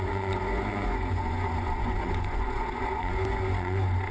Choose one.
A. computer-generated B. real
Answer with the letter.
A